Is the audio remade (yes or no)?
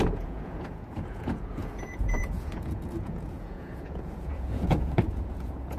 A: yes